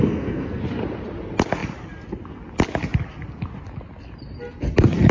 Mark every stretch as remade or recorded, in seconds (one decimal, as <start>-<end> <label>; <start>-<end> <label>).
0.0-0.6 remade; 0.6-5.1 recorded